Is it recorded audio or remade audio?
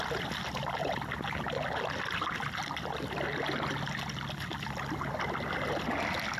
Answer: recorded